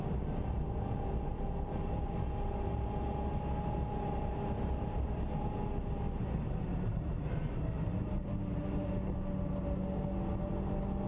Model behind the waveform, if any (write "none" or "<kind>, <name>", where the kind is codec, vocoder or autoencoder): none